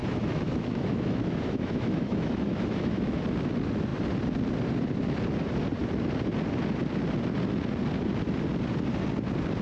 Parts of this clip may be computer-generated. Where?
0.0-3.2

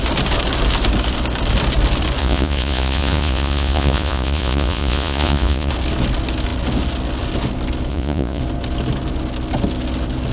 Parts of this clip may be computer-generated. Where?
2.2-5.7; 7.9-8.4

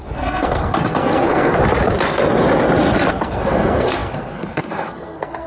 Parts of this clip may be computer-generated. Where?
0.0-1.6; 3.1-5.5

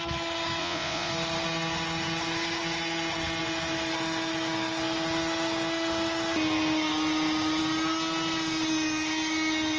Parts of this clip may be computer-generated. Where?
0.6-1.1

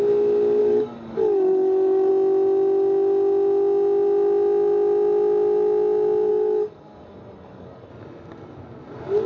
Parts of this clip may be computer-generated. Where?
0.6-2.1; 6.3-7.9

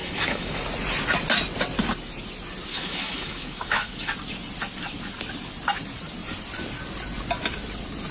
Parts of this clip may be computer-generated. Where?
0.0-0.6; 2.7-4.1

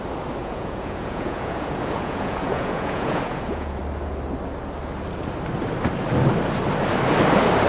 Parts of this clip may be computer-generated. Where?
0.4-3.8